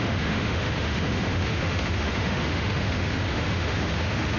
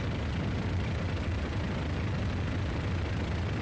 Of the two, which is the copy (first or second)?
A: first